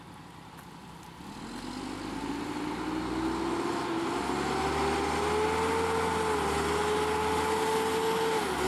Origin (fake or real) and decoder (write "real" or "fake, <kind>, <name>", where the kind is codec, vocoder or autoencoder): real